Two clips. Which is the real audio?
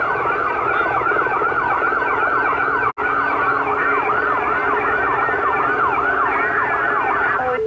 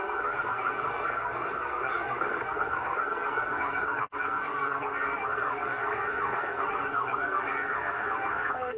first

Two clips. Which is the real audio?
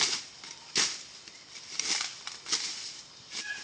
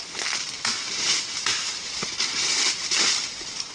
second